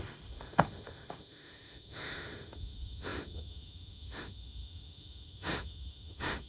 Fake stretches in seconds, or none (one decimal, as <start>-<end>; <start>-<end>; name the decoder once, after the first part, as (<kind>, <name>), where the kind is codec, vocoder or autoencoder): 0.0-6.5 (autoencoder, DAC-VAE)